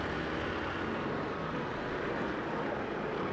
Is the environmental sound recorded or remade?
recorded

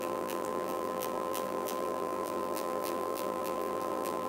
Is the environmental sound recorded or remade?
remade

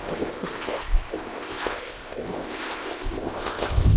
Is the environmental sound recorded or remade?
remade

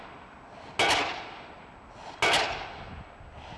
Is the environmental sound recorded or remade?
recorded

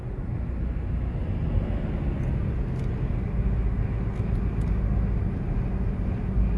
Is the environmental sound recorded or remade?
recorded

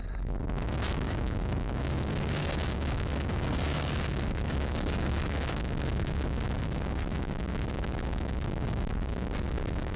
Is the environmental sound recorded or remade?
remade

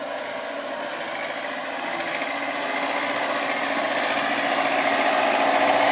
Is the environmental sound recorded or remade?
recorded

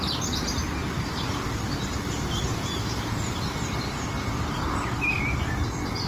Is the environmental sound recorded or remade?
recorded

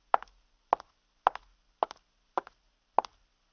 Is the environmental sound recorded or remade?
recorded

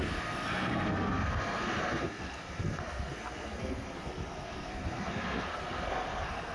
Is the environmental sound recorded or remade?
remade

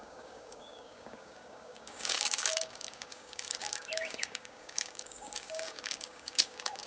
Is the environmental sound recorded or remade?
remade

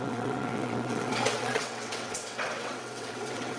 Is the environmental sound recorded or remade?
remade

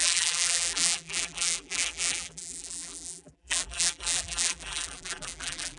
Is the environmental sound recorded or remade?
remade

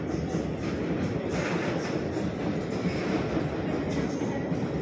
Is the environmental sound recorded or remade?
recorded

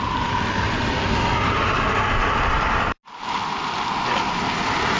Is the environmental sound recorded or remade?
recorded